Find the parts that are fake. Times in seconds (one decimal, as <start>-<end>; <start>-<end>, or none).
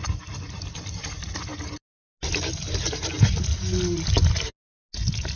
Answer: none